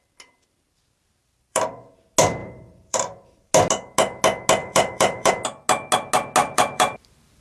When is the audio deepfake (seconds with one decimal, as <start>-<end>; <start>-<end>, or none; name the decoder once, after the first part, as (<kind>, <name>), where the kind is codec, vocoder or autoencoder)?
1.2-1.9 (vocoder, BigVGAN v2); 2.4-3.5; 4.6-5.3; 6.4-7.4